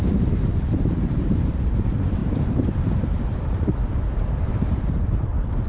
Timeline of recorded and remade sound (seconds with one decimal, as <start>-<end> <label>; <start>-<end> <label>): 0.0-5.7 remade